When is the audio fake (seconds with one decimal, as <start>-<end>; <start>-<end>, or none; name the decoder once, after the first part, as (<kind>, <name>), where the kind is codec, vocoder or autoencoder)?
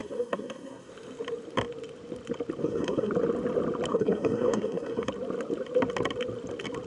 0.0-0.9 (codec, SNAC); 2.6-3.1; 3.9-5.1